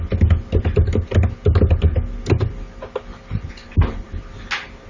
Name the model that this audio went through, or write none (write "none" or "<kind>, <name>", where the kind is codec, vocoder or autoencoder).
none